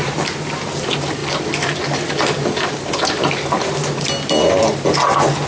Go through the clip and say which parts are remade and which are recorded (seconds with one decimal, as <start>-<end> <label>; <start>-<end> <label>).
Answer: 0.0-5.5 recorded